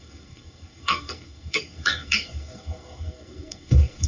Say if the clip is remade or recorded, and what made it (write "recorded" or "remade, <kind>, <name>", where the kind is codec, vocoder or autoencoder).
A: remade, codec, SNAC